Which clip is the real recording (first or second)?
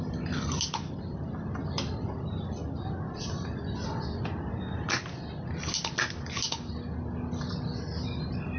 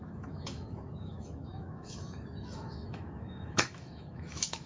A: first